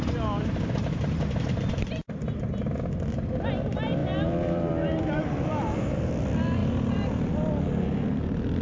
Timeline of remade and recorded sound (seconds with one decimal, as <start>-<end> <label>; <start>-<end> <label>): 0.0-0.4 recorded; 0.4-1.7 remade; 1.7-4.0 recorded; 4.0-6.1 remade; 6.1-6.6 recorded; 6.6-7.3 remade; 7.3-8.6 recorded

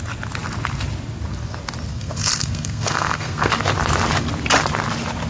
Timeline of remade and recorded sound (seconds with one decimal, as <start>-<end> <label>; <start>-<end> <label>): 0.0-1.9 recorded; 1.9-3.5 remade; 3.5-5.3 recorded

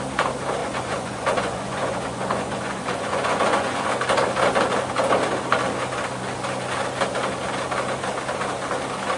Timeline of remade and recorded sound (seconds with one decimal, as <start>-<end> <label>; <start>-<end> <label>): 0.0-0.6 recorded; 0.6-3.9 remade; 3.9-9.2 recorded